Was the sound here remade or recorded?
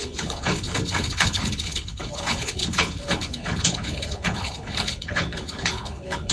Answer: remade